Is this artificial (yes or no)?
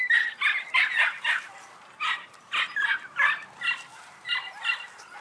no